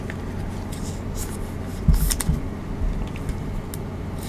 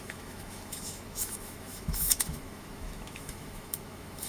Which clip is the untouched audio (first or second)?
first